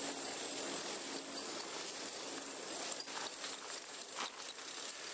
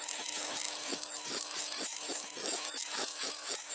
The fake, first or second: second